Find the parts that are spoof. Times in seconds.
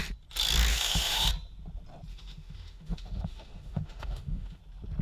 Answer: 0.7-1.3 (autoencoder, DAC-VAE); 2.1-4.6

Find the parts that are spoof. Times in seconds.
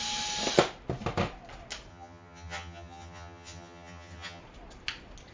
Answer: 1.9-4.4 (vocoder, HiFi-GAN)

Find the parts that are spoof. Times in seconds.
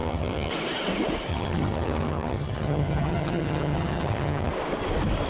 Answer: 0.0-0.5 (vocoder, HiFi-GAN); 1.3-4.5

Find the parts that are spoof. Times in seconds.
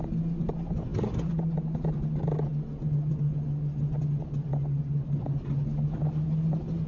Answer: none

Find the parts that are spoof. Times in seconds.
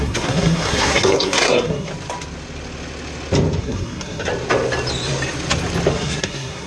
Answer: 0.0-1.9 (codec, SNAC); 3.6-4.3; 5.9-6.7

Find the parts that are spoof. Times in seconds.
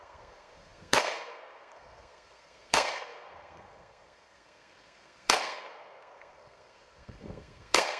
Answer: 0.0-8.0 (codec, SNAC)